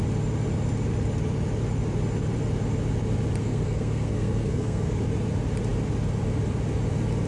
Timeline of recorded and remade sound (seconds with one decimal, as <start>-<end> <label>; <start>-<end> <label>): 0.0-3.4 recorded; 3.4-5.0 remade; 5.0-7.3 recorded